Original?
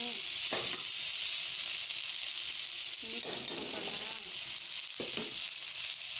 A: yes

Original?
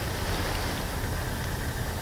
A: yes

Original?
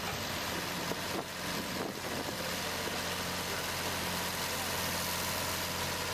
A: yes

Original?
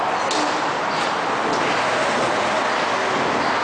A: yes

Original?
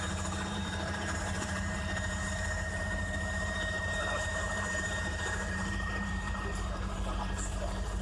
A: no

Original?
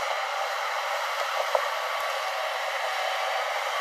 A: yes